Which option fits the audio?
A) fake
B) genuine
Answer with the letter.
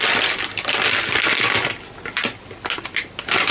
B